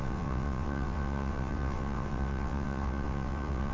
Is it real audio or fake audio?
fake